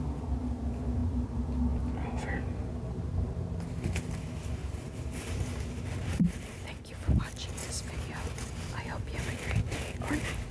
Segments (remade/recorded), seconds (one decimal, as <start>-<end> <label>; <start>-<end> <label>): 0.0-1.0 recorded; 1.0-2.3 remade; 2.3-4.6 recorded; 4.6-6.9 remade; 6.9-10.5 recorded